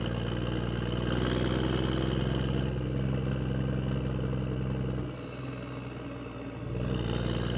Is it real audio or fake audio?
real